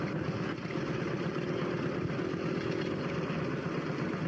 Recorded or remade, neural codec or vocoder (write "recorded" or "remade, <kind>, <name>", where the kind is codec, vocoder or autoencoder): recorded